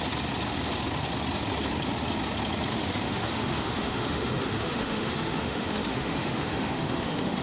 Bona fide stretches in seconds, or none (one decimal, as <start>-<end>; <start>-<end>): 0.0-2.7